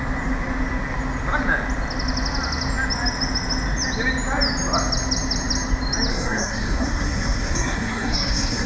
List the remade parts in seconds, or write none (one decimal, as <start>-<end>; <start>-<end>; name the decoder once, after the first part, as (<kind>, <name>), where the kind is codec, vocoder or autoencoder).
6.1-8.7 (codec, SNAC)